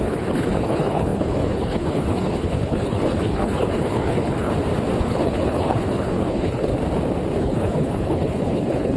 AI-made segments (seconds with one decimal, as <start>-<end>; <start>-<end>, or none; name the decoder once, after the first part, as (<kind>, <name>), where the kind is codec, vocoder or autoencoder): 0.0-4.5 (codec, HILCodec); 5.0-6.7; 7.4-9.0